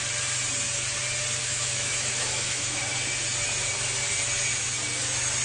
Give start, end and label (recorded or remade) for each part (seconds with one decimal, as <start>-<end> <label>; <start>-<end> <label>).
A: 0.0-1.4 recorded; 1.4-2.8 remade; 2.8-5.4 recorded